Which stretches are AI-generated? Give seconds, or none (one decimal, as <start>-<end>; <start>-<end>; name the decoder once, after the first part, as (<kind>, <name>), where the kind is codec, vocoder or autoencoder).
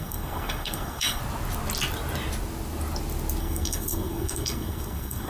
0.0-1.2 (codec, SNAC); 3.4-5.3